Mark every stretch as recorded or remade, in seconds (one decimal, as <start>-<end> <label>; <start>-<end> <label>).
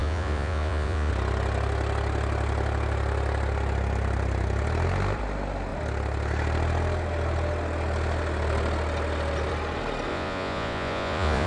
0.0-1.1 remade; 1.1-10.1 recorded; 10.1-11.5 remade